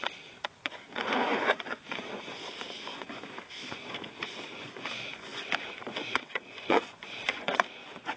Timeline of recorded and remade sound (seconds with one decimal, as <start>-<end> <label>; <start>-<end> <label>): 0.0-8.2 remade